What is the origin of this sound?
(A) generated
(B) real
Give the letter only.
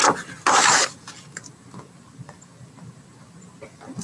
B